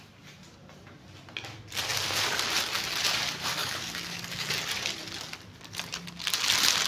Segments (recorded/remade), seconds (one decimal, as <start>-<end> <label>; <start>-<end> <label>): 0.0-3.6 recorded; 3.6-4.5 remade; 4.5-6.9 recorded